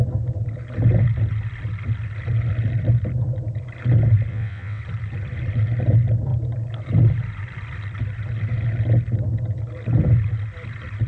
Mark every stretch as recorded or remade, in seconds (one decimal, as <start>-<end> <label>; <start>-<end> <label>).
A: 0.0-4.3 recorded; 4.3-4.8 remade; 4.8-11.1 recorded